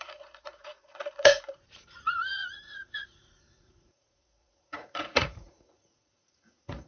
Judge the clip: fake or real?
fake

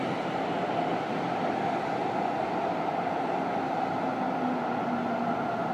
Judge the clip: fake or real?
real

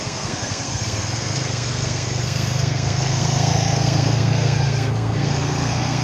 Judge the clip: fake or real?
fake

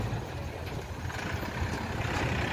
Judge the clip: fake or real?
real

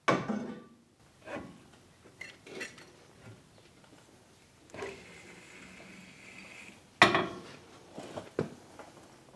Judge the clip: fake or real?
real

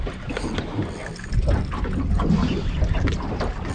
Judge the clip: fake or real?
real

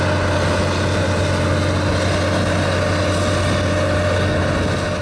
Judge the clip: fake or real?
real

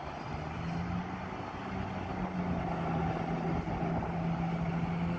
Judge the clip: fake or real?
real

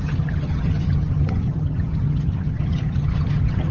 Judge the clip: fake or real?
fake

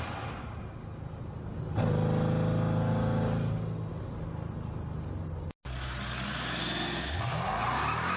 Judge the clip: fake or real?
real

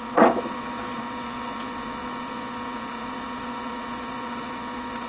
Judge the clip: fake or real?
fake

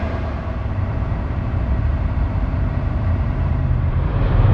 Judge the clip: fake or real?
fake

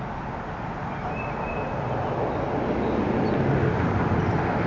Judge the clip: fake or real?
real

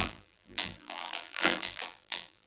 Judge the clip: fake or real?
fake